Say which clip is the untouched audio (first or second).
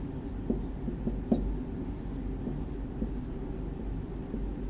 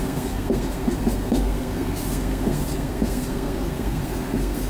first